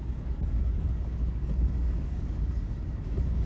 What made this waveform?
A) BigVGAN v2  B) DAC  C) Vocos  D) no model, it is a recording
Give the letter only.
B